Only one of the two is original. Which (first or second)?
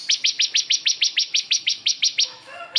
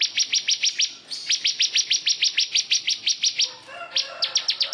second